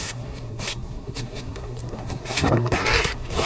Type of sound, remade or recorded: remade